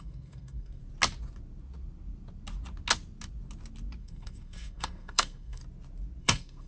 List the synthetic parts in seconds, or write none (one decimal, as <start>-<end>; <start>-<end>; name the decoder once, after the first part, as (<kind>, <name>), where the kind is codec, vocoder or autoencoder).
0.0-0.8 (codec, SNAC); 4.0-5.6; 6.2-6.7